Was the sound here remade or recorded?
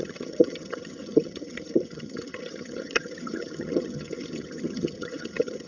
remade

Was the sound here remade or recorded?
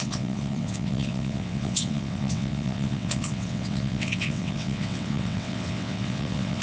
remade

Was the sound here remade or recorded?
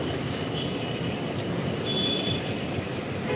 recorded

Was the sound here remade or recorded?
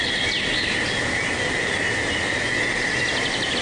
recorded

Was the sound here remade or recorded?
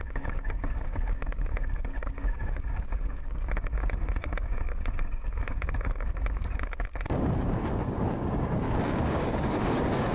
remade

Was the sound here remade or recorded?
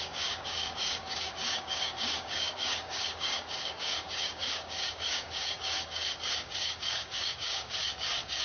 remade